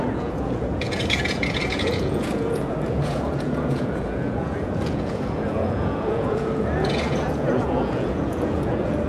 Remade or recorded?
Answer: remade